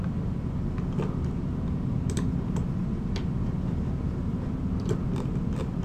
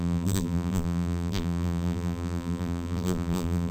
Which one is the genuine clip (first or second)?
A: first